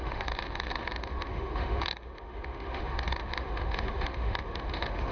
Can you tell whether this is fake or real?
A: fake